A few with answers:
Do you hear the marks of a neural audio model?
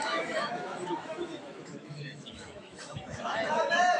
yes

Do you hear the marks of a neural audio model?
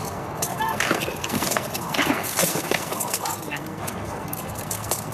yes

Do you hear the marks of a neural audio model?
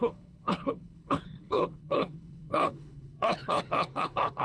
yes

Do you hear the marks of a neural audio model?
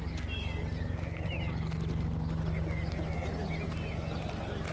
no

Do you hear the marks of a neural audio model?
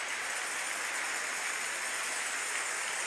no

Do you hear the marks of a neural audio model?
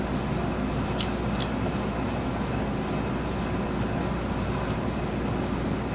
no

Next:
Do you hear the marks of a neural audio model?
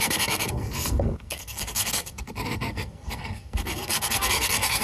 yes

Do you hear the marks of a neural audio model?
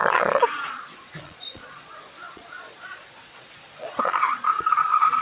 yes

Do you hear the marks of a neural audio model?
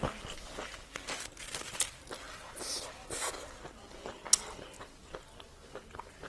no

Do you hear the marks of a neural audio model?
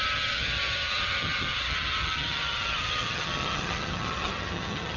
yes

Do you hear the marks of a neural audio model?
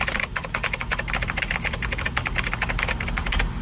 no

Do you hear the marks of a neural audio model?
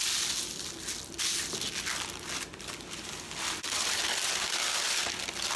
no